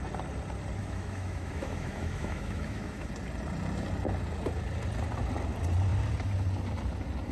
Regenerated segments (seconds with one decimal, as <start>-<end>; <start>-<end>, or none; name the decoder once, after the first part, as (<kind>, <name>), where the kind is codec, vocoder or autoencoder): 0.8-3.1 (autoencoder, DAC-VAE)